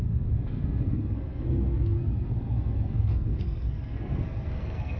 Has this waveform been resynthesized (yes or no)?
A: yes